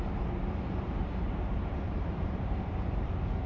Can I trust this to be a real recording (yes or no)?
no